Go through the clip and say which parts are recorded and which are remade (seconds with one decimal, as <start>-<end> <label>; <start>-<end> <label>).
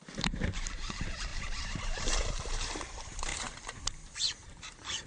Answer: 0.0-5.1 remade